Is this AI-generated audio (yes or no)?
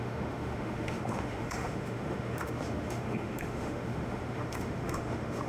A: yes